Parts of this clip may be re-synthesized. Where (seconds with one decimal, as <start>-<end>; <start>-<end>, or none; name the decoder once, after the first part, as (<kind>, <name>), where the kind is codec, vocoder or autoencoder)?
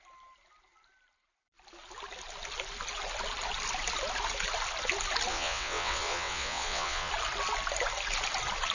5.3-7.1 (vocoder, WaveNeXt)